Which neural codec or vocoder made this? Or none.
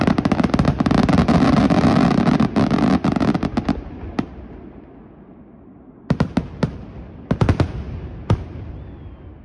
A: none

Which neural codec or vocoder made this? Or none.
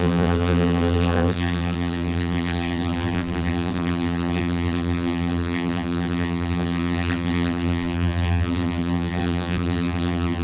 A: vocoder, BigVGAN v2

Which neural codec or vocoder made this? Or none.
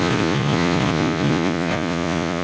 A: vocoder, Vocos